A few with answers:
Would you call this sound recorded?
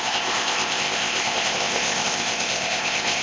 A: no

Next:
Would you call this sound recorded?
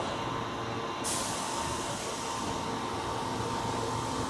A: yes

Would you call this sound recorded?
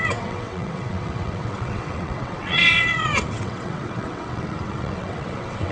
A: no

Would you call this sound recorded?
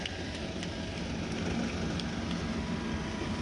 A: yes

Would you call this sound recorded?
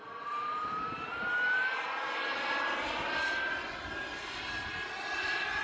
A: yes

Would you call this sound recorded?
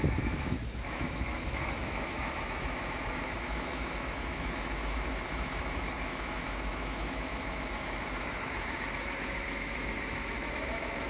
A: no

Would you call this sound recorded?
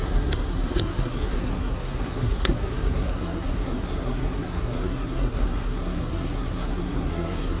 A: no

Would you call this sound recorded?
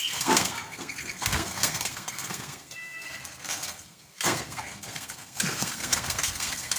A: no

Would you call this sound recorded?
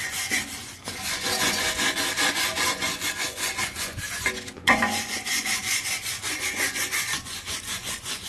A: no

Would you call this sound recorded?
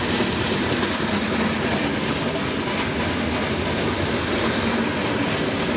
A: yes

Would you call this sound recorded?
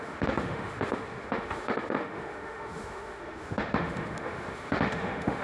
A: no